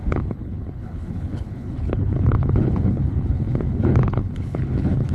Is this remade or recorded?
remade